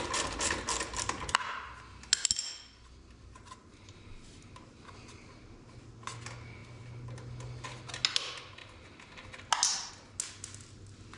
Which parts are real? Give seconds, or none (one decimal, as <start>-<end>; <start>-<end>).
0.0-11.2